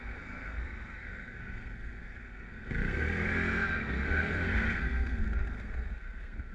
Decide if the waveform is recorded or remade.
remade